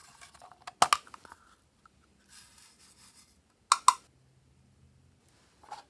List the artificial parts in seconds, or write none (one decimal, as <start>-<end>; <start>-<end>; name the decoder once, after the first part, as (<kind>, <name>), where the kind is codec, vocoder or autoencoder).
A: none